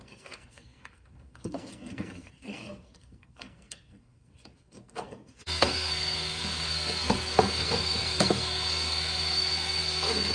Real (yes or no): no